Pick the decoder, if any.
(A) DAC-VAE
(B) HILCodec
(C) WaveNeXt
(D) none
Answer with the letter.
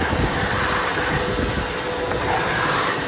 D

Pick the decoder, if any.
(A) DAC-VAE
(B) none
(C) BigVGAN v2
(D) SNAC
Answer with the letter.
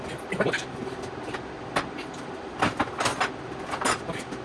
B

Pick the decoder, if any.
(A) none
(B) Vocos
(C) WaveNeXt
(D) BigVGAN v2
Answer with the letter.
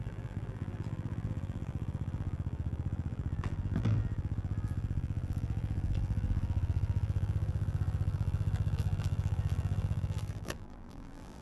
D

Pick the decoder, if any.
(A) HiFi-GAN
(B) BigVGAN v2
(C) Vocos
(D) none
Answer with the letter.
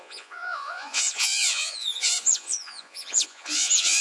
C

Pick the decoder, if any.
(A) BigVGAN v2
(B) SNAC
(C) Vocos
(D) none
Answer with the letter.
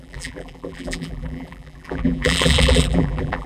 A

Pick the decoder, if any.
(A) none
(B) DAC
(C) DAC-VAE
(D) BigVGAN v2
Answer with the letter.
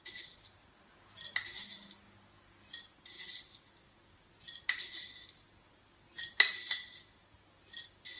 A